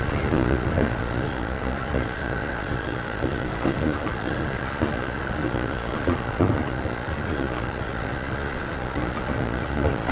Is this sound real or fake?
fake